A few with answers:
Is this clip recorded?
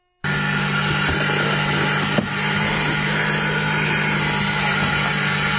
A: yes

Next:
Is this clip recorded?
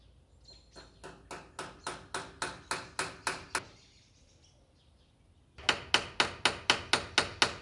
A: yes